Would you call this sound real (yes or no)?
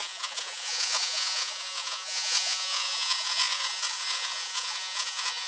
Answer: no